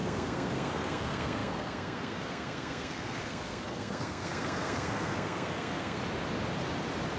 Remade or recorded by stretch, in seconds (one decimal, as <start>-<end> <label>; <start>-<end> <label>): 0.0-6.0 remade; 6.0-7.2 recorded